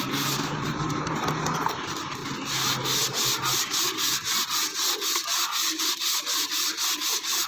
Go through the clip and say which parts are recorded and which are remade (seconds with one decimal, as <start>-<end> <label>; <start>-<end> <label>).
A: 0.0-2.2 remade; 2.2-5.8 recorded; 5.8-7.5 remade